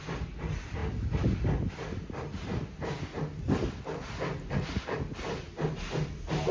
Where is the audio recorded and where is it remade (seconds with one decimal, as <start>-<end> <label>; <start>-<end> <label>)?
0.0-6.5 recorded